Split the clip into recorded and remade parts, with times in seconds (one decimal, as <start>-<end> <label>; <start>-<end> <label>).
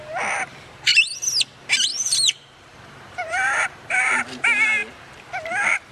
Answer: 0.0-1.9 recorded; 1.9-4.1 remade; 4.1-5.9 recorded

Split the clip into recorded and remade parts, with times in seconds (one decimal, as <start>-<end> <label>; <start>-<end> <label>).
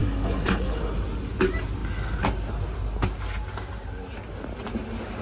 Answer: 0.0-0.8 remade; 0.8-5.2 recorded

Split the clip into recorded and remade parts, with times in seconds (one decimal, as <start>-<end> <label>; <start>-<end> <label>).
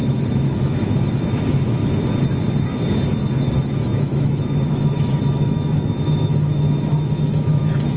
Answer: 0.0-1.8 remade; 1.8-3.5 recorded; 3.5-8.0 remade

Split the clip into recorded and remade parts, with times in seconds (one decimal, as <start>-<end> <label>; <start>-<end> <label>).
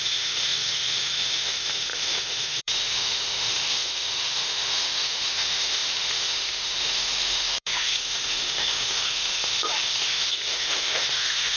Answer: 0.0-11.6 remade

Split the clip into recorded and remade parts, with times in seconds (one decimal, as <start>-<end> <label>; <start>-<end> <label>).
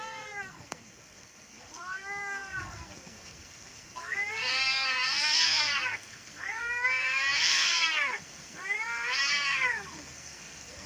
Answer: 0.0-10.9 remade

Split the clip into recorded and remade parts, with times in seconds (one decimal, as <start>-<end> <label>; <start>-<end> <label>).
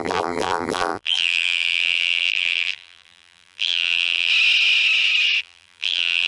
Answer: 0.0-4.3 remade; 4.3-5.4 recorded; 5.4-6.3 remade